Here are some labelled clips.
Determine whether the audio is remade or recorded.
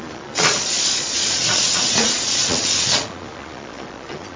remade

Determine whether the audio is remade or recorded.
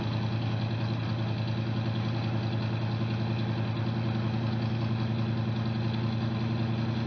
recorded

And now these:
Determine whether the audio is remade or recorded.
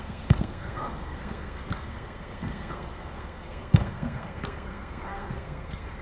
remade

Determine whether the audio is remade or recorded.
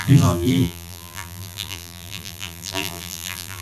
remade